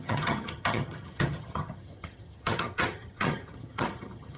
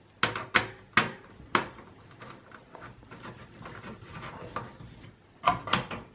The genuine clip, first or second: second